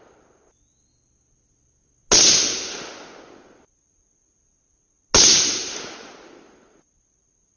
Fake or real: real